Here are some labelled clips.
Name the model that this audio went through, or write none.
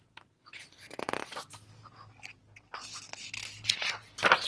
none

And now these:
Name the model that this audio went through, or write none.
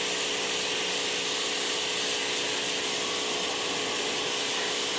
none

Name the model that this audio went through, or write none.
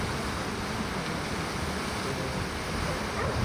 none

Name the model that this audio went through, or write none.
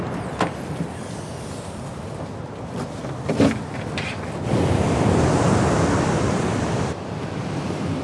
vocoder, BigVGAN v2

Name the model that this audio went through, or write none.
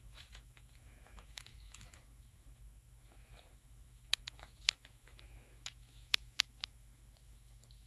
autoencoder, DAC-VAE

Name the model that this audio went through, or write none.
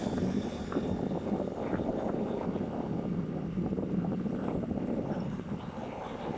none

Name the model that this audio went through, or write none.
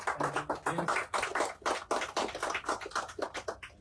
none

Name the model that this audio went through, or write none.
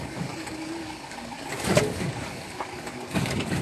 codec, DAC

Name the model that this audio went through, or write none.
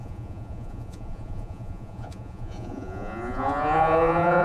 vocoder, Vocos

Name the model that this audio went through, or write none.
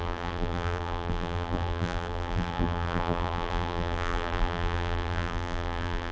vocoder, BigVGAN v2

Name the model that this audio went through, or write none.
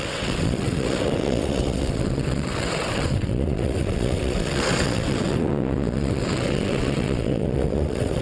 vocoder, WaveNeXt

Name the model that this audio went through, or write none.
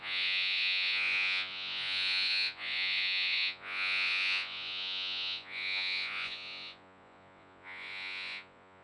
vocoder, Vocos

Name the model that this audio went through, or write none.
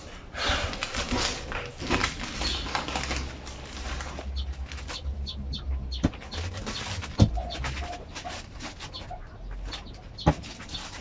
none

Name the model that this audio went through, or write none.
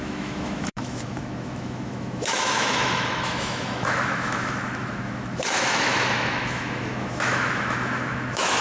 autoencoder, DAC-VAE